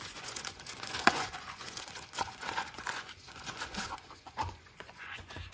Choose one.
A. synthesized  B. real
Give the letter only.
A